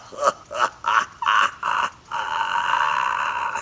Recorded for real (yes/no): yes